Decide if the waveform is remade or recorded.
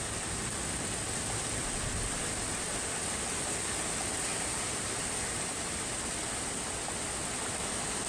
recorded